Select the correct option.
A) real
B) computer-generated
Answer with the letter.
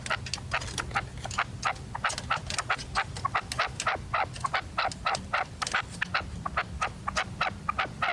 A